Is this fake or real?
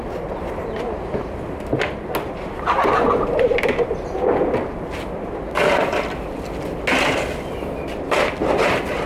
real